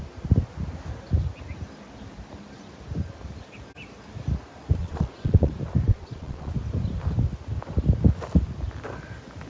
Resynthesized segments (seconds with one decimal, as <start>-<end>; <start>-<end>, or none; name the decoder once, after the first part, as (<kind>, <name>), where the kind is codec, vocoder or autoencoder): 4.8-5.5 (vocoder, Vocos); 5.9-6.5